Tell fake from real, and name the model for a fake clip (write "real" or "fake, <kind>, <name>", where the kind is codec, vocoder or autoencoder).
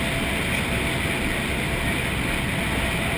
real